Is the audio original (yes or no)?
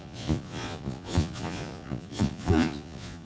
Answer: no